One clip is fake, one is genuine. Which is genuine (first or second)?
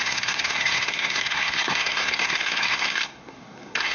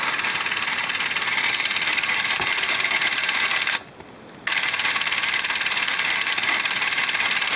second